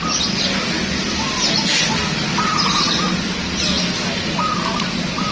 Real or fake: real